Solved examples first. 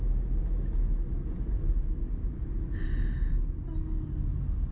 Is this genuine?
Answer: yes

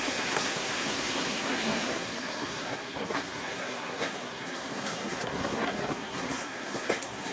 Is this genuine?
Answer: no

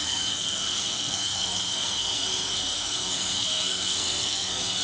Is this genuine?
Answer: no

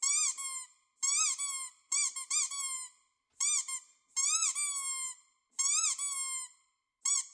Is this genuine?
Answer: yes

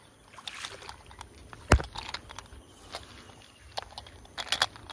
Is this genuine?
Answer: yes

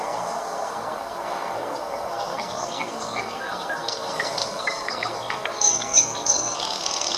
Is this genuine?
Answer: no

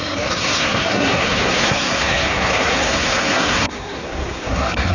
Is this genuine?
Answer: no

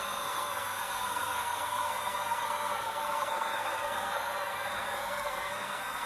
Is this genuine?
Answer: no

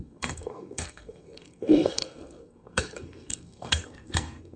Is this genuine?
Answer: no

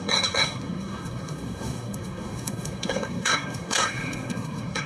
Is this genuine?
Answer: no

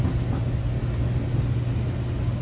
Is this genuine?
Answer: yes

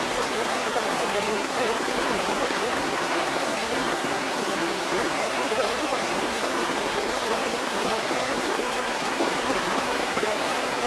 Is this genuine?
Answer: no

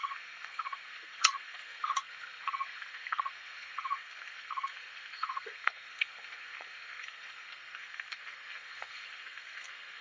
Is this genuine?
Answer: no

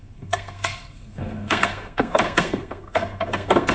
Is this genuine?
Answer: no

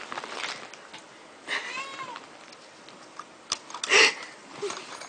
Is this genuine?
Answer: yes